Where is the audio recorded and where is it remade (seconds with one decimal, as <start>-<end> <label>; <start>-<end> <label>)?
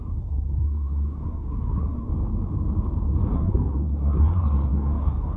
0.0-2.1 remade; 2.1-3.3 recorded; 3.3-5.4 remade